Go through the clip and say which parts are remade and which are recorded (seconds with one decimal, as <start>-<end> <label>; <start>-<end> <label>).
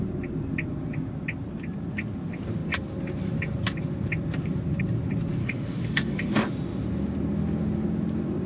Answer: 0.0-5.4 recorded; 5.4-6.3 remade; 6.3-8.5 recorded